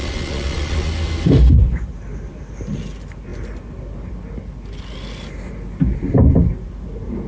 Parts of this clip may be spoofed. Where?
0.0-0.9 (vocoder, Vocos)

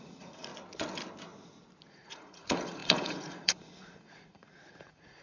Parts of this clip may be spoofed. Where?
0.0-0.5 (vocoder, Vocos); 1.9-5.2